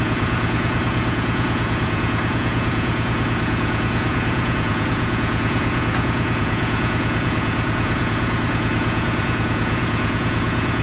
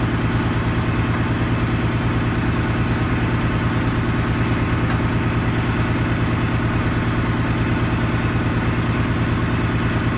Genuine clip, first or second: second